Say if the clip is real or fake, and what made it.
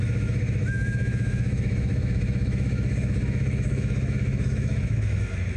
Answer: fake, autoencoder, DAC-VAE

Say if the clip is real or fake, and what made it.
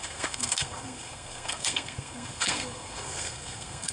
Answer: fake, codec, SNAC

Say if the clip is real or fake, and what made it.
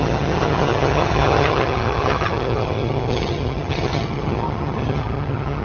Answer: fake, vocoder, HiFi-GAN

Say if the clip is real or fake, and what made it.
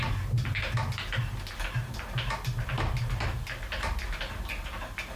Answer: real